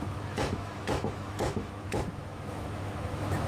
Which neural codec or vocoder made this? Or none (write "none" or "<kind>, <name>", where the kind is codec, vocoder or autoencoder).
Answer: autoencoder, DAC-VAE